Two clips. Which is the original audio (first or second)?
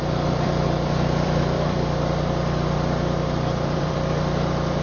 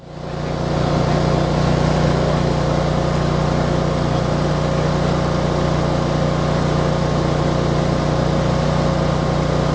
second